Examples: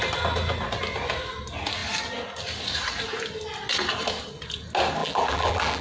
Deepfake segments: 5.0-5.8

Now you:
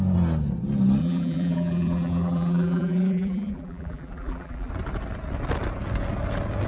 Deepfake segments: 1.0-4.7